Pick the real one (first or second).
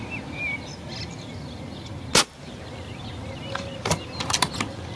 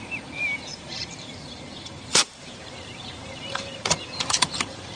first